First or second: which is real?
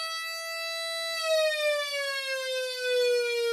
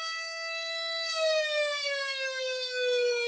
first